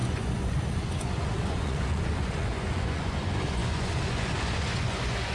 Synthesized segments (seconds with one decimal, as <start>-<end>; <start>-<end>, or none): 0.0-5.3